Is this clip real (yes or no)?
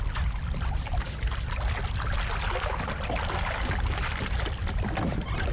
yes